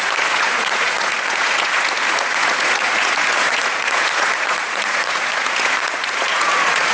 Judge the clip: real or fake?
fake